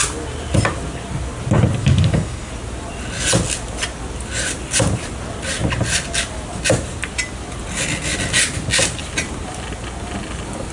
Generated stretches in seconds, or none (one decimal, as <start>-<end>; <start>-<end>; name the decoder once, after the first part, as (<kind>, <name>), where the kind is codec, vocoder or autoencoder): 1.8-2.5 (codec, DAC)